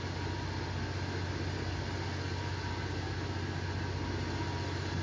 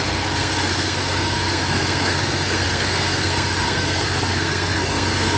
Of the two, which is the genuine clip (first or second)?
first